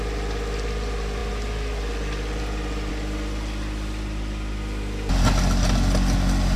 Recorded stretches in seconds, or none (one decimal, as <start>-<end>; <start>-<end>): 0.0-6.6